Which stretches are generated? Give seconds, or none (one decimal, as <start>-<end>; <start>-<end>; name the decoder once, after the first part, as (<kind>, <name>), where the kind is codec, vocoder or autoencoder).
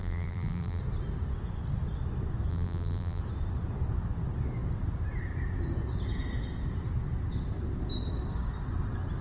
0.0-0.8 (vocoder, BigVGAN v2); 2.5-3.2